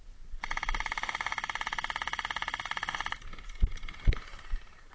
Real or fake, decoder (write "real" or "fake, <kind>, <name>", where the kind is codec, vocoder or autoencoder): real